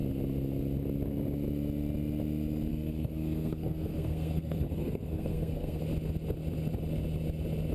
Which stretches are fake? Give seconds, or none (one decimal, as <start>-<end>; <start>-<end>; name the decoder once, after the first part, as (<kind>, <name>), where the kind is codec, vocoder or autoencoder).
2.7-5.8 (codec, SNAC)